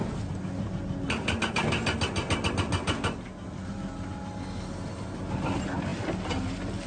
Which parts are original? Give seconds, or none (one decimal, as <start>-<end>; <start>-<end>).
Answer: 0.0-6.9